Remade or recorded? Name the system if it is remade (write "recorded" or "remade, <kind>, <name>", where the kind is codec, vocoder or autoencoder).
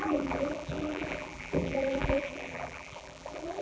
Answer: remade, vocoder, BigVGAN v2